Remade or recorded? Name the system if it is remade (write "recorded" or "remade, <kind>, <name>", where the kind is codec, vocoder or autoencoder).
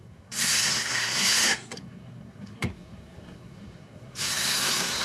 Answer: remade, codec, SNAC